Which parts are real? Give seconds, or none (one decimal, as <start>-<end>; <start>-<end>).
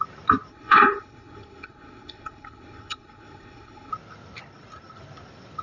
0.0-0.5; 3.9-5.6